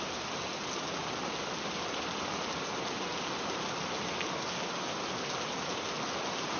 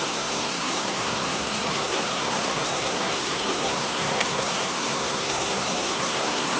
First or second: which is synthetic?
second